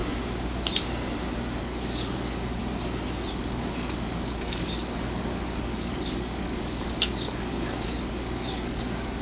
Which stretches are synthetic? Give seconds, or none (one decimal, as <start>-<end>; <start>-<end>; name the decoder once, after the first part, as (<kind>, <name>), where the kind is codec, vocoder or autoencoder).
1.6-2.6 (codec, DAC); 3.3-9.2